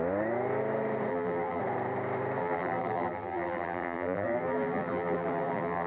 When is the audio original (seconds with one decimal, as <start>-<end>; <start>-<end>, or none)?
0.0-1.1; 1.6-2.4